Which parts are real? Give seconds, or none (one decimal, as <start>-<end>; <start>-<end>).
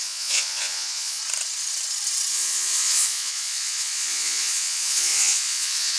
1.2-2.3